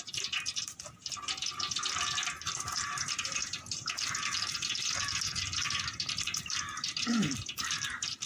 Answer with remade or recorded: remade